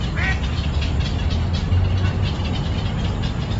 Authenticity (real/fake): real